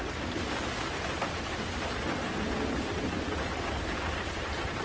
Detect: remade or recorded recorded